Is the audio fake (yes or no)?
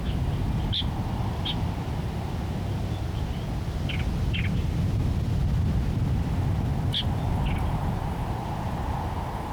no